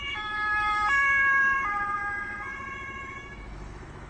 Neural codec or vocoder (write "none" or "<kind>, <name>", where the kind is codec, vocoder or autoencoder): autoencoder, DAC-VAE